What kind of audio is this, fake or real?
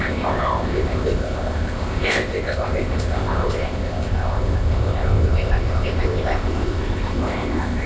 fake